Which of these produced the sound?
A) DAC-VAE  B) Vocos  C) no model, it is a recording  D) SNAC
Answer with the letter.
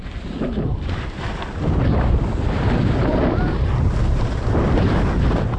C